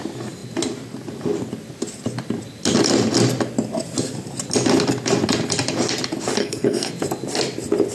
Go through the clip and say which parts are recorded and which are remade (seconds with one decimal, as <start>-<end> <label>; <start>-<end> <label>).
0.0-6.4 recorded; 6.4-6.9 remade; 6.9-7.9 recorded